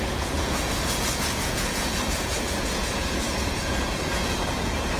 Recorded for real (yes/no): no